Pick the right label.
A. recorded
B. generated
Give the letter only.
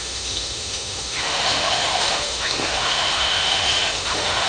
B